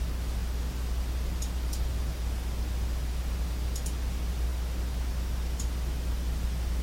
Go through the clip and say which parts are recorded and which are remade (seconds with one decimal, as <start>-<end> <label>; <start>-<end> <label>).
0.0-4.5 recorded; 4.5-6.8 remade